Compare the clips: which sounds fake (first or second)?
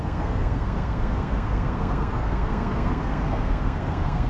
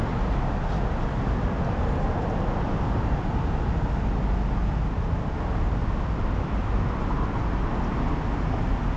first